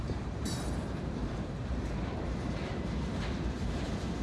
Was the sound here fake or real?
fake